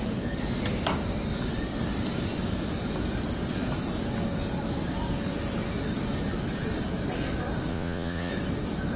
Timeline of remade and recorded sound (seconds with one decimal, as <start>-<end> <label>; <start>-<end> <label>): 0.0-7.7 recorded; 7.7-8.3 remade; 8.3-9.0 recorded